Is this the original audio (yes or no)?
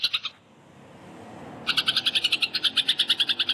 yes